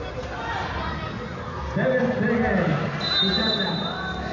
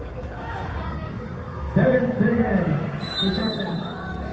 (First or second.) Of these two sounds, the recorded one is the first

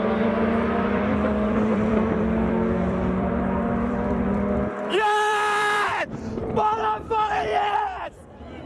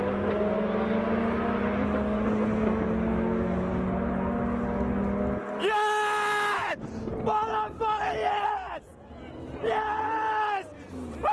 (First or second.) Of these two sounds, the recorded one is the second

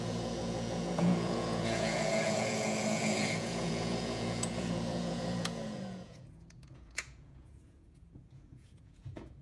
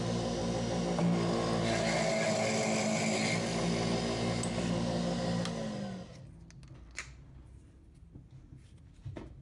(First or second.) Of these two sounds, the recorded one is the second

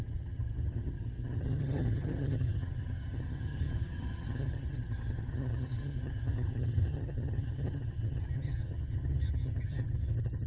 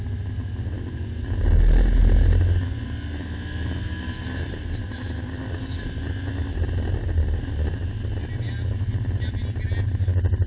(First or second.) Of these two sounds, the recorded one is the second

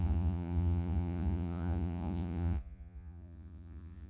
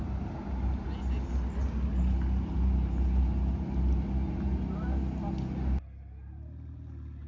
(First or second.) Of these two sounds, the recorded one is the second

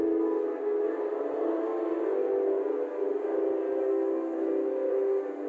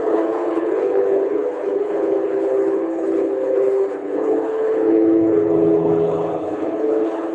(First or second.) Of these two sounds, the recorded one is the first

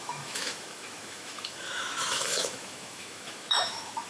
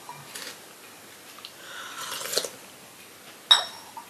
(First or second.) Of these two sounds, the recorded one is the second